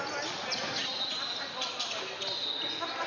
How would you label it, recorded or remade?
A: recorded